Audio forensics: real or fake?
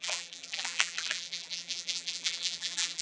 fake